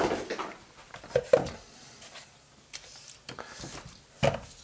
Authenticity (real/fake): real